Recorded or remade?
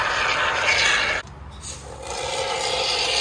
recorded